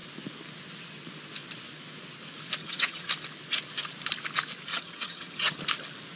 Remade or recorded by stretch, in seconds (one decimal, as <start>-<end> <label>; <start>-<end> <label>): 0.0-2.6 recorded; 2.6-3.1 remade; 3.1-4.7 recorded; 4.7-5.6 remade; 5.6-6.2 recorded

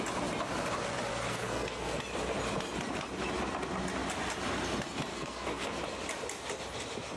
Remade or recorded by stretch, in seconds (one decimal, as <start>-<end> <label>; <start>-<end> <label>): 0.0-1.1 recorded; 1.1-2.0 remade; 2.0-5.1 recorded; 5.1-5.8 remade; 5.8-7.2 recorded

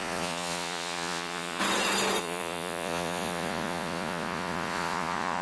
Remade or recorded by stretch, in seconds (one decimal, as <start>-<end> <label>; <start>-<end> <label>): 0.0-1.6 remade; 1.6-2.2 recorded; 2.2-5.4 remade

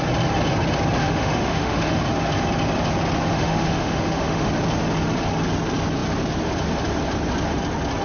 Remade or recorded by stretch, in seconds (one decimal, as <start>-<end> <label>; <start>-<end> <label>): 0.0-1.0 recorded; 1.0-2.0 remade; 2.0-3.3 recorded; 3.3-4.5 remade; 4.5-8.0 recorded

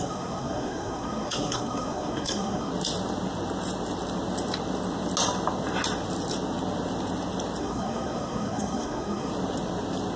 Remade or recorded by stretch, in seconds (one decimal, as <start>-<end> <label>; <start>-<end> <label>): 0.0-2.7 remade; 2.7-7.6 recorded; 7.6-9.3 remade; 9.3-10.2 recorded